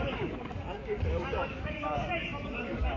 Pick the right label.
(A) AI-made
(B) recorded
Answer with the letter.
A